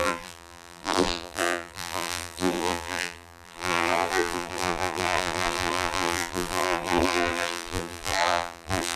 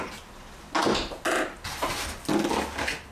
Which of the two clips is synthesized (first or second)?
first